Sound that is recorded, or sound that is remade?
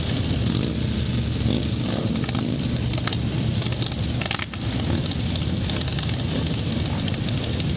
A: recorded